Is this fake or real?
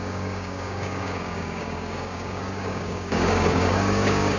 fake